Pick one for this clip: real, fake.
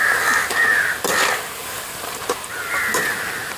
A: real